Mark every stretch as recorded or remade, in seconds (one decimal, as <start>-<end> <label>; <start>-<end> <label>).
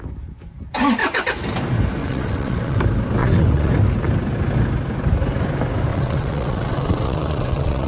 0.0-2.0 recorded; 2.0-2.8 remade; 2.8-3.2 recorded; 3.2-3.7 remade; 3.7-5.9 recorded; 5.9-7.9 remade